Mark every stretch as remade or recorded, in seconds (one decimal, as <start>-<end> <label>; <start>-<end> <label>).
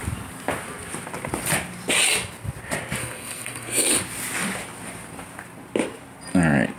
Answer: 0.0-3.0 recorded; 3.0-3.9 remade; 3.9-6.8 recorded